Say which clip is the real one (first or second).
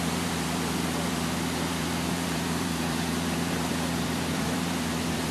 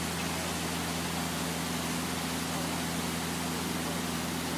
second